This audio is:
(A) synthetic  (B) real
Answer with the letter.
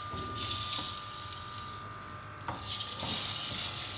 B